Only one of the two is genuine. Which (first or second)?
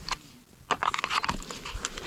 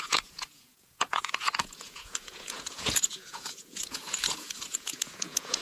first